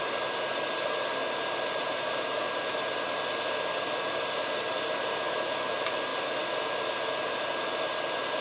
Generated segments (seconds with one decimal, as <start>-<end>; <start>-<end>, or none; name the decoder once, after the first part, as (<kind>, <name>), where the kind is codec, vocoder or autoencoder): none